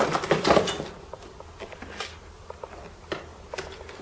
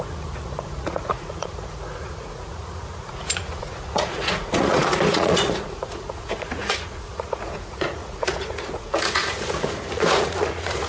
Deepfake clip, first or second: second